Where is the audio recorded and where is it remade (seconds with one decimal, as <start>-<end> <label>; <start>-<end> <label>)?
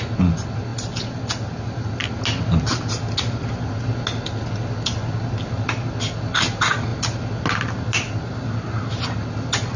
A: 0.0-9.8 recorded